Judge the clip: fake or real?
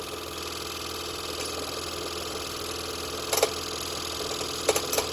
real